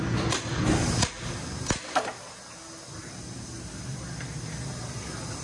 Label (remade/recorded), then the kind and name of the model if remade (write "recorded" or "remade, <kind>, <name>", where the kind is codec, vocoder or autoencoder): recorded